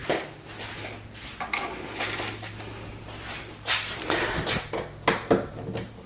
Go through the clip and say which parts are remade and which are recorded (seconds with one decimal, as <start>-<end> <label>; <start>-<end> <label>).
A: 0.0-6.1 recorded